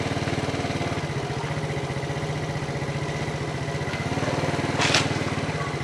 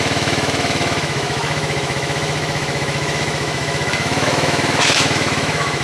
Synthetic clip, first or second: second